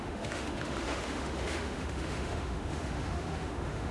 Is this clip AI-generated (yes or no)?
yes